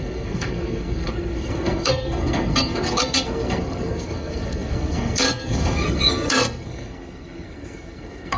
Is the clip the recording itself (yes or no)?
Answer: no